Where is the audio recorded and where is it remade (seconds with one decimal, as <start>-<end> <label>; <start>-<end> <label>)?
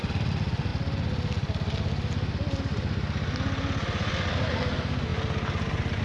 0.0-6.0 recorded